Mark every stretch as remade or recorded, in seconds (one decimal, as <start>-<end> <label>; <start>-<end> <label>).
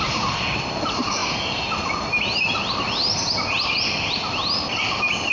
0.0-5.3 recorded